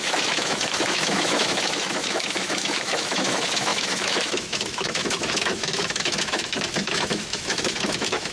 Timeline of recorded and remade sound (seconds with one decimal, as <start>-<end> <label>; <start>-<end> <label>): 0.0-8.3 remade